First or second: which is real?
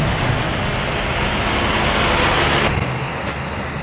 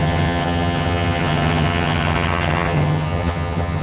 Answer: first